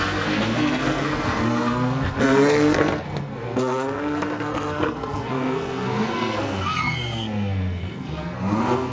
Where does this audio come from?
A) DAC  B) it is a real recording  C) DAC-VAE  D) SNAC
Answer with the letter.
D